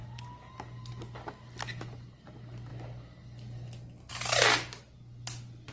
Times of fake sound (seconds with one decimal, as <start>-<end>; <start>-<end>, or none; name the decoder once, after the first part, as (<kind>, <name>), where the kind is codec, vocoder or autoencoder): none

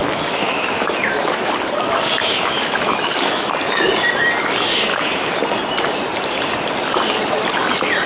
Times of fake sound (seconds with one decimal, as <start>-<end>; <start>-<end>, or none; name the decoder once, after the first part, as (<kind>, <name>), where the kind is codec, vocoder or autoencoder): 0.4-1.5 (autoencoder, DAC-VAE); 2.2-3.5; 4.9-5.4